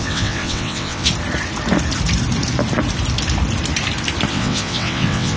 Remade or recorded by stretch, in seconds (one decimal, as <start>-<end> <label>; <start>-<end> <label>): 0.0-1.1 remade; 1.1-4.3 recorded; 4.3-5.4 remade